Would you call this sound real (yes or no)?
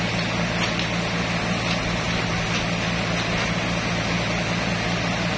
yes